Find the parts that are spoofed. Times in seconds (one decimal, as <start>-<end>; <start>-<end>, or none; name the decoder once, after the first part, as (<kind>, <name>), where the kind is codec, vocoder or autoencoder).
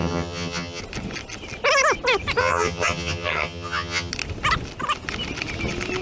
0.0-0.8 (vocoder, HiFi-GAN); 2.4-4.1